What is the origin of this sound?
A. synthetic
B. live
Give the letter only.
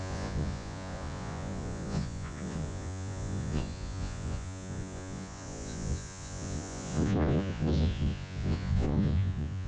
A